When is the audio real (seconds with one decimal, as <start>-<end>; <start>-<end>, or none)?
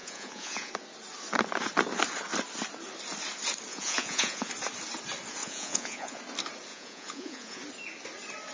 0.7-3.7; 4.5-5.4; 6.2-6.7; 7.6-8.5